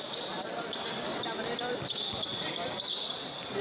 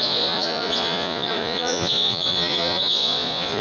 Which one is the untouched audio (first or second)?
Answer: first